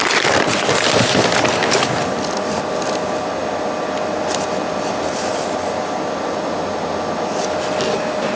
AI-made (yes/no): no